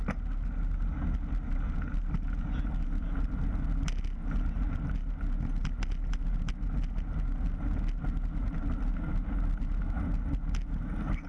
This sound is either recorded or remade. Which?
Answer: recorded